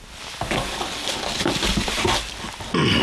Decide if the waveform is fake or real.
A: real